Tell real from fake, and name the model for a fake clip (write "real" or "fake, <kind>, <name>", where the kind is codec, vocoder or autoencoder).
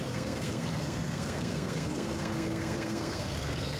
fake, codec, SNAC